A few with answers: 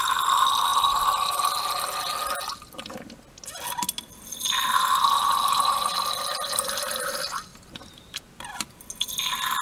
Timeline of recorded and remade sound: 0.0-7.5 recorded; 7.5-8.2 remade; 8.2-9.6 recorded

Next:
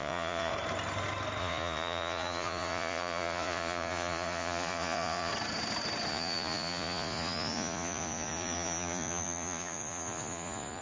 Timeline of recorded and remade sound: 0.0-0.5 remade; 0.5-1.4 recorded; 1.4-5.3 remade; 5.3-6.1 recorded; 6.1-10.8 remade

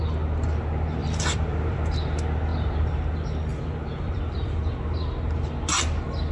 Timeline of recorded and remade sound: 0.0-1.0 recorded; 1.0-1.8 remade; 1.8-3.5 recorded; 3.5-4.2 remade; 4.2-6.3 recorded

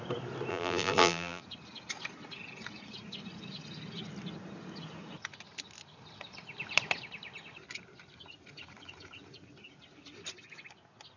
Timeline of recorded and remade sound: 0.0-0.5 recorded; 0.5-1.4 remade; 1.4-11.2 recorded

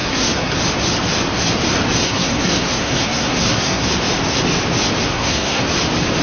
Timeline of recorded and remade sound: 0.0-0.6 remade; 0.6-2.0 recorded; 2.0-3.9 remade; 3.9-5.1 recorded; 5.1-5.6 remade; 5.6-6.2 recorded